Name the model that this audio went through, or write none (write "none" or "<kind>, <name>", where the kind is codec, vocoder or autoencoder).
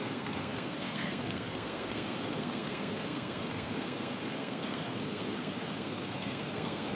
codec, SNAC